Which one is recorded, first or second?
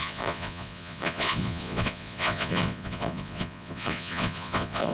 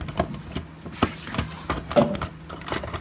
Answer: second